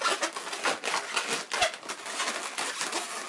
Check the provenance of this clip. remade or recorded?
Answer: recorded